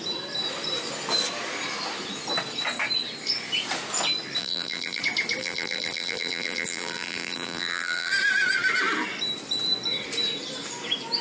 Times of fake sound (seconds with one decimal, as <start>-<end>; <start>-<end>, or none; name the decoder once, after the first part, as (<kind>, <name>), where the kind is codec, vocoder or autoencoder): 4.4-5.0 (vocoder, BigVGAN v2); 5.4-8.1